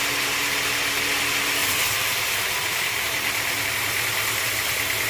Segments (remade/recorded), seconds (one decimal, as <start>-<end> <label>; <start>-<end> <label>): 0.0-1.6 recorded; 1.6-3.7 remade; 3.7-5.1 recorded